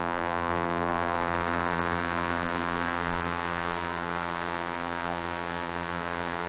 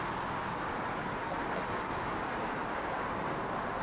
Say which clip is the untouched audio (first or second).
second